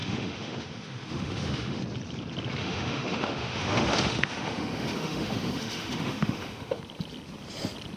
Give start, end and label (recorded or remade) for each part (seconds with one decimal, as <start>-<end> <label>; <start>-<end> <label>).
0.0-1.8 remade; 1.8-2.6 recorded; 2.6-6.8 remade; 6.8-8.0 recorded

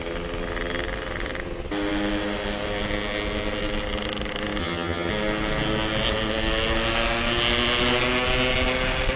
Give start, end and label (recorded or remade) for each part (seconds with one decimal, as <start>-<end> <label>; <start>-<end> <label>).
0.0-4.6 recorded; 4.6-5.1 remade; 5.1-9.2 recorded

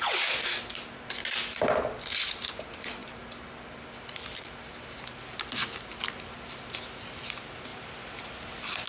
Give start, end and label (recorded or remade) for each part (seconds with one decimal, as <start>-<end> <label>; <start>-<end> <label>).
0.0-7.7 recorded; 7.7-8.9 remade

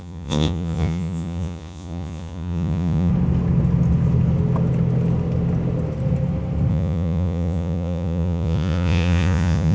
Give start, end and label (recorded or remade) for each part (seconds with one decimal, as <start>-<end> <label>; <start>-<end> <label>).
0.0-3.1 remade; 3.1-6.7 recorded; 6.7-9.7 remade